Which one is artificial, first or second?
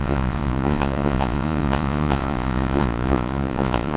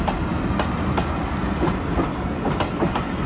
first